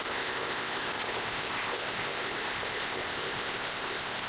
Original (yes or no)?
no